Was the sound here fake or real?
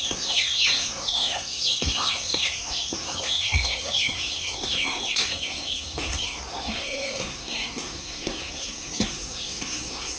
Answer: fake